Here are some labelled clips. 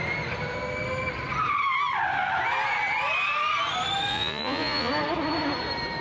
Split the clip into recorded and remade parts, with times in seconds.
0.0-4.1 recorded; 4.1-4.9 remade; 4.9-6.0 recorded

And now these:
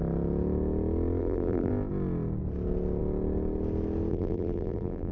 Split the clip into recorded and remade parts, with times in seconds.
0.0-1.2 recorded; 1.2-1.7 remade; 1.7-4.1 recorded; 4.1-5.1 remade

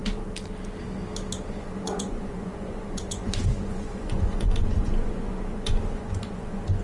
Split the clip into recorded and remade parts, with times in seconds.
0.0-1.5 recorded; 1.5-6.8 remade

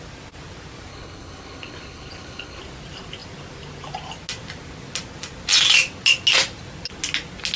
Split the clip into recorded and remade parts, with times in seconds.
0.0-0.9 recorded; 0.9-2.6 remade; 2.6-7.6 recorded

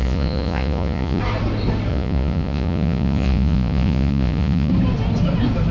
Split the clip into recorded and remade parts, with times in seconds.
0.0-1.2 remade; 1.2-1.9 recorded; 1.9-4.7 remade; 4.7-5.7 recorded

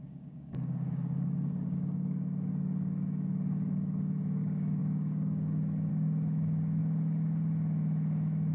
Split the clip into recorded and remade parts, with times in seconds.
0.0-6.8 remade; 6.8-8.5 recorded

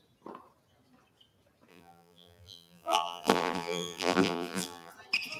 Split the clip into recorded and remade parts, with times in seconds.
0.0-1.7 recorded; 1.7-4.9 remade; 4.9-5.4 recorded

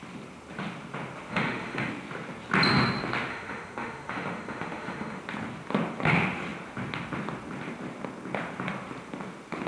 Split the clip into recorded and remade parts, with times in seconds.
0.0-1.3 recorded; 1.3-1.9 remade; 1.9-3.3 recorded; 3.3-5.2 remade; 5.2-9.7 recorded